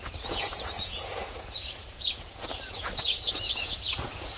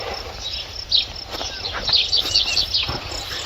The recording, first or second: second